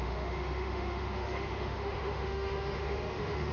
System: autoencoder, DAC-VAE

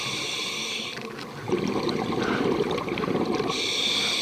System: none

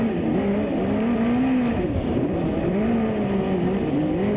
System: none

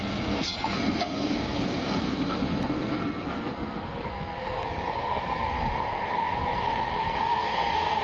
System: codec, SNAC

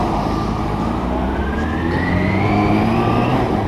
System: vocoder, BigVGAN v2